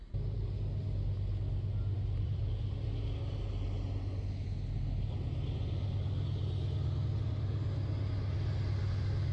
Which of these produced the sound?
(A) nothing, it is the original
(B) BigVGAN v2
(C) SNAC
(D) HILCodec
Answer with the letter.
A